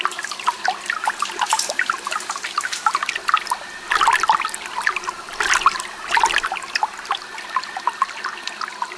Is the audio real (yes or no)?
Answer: yes